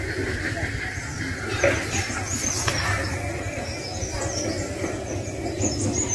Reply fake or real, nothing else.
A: real